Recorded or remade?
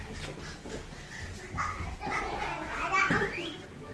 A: recorded